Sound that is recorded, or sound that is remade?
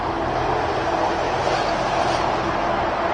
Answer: recorded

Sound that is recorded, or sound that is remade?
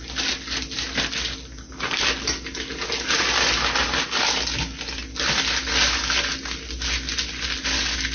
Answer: recorded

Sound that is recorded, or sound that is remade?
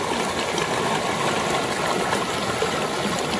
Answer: recorded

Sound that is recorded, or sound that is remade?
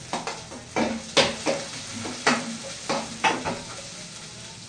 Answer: recorded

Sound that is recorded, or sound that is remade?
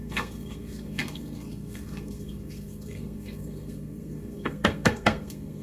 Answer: remade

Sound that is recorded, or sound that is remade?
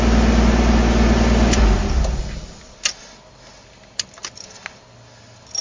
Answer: recorded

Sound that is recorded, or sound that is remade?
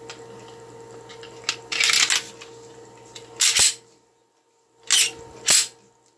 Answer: recorded